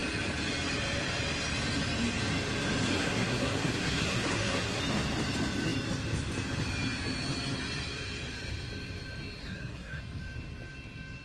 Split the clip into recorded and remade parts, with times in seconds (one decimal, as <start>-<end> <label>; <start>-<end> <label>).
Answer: 0.0-2.9 recorded; 2.9-4.8 remade; 4.8-9.4 recorded; 9.4-10.0 remade; 10.0-11.2 recorded